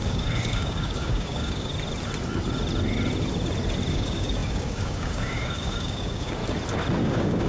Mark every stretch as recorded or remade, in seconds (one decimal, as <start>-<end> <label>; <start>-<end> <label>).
0.0-1.7 remade; 1.7-3.9 recorded; 3.9-6.4 remade; 6.4-7.0 recorded; 7.0-7.5 remade